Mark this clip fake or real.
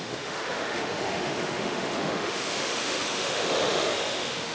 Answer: fake